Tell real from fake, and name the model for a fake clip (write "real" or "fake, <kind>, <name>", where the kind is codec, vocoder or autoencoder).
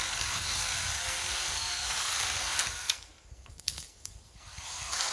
fake, codec, SNAC